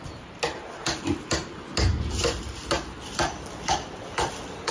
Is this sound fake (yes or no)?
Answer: no